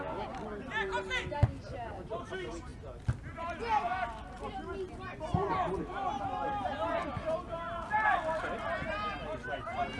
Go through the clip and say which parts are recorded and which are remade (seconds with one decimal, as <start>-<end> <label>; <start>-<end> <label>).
0.0-10.0 recorded